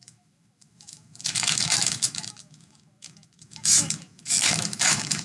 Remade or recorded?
remade